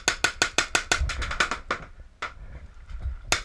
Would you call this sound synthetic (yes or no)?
no